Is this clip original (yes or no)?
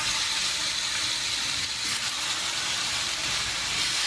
yes